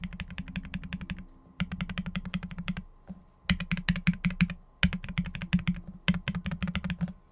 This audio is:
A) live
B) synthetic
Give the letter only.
A